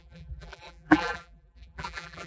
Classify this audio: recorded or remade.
remade